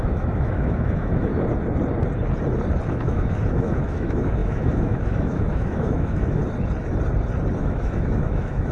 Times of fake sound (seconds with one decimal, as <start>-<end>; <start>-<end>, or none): 0.0-1.3; 2.9-6.4; 7.6-8.7